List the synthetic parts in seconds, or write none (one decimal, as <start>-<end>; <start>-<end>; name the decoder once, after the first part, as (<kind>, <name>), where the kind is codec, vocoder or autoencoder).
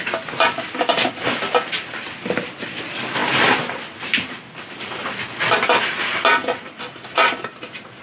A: none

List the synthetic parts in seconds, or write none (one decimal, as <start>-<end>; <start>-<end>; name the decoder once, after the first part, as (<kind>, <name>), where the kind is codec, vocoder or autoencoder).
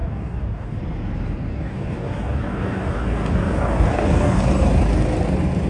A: 0.0-0.8 (codec, DAC); 1.5-4.4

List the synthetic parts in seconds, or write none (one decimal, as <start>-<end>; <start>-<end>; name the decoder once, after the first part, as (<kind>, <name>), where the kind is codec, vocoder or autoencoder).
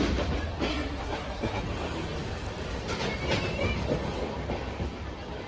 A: 0.7-1.6 (codec, SNAC)